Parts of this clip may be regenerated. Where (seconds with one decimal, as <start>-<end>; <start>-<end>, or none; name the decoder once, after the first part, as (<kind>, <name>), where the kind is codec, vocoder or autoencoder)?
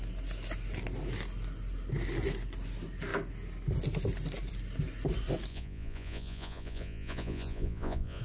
5.5-8.2 (vocoder, Vocos)